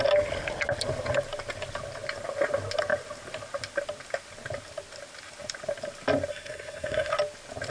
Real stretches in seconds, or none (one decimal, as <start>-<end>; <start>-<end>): 0.0-6.3; 7.1-7.7